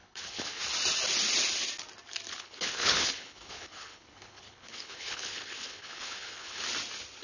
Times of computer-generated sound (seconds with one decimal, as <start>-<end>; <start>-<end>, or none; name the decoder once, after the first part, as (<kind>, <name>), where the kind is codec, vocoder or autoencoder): 0.0-0.6 (codec, HILCodec); 2.3-6.6